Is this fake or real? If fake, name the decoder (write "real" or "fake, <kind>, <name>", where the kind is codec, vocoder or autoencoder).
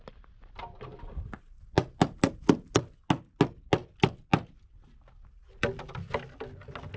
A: real